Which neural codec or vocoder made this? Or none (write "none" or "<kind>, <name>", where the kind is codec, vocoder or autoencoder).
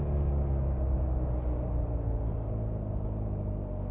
none